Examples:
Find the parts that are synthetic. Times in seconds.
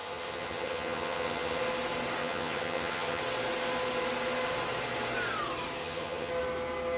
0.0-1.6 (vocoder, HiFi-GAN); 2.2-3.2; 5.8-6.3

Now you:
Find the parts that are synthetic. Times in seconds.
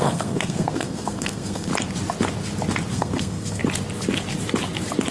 0.0-1.7 (codec, SNAC); 2.9-3.6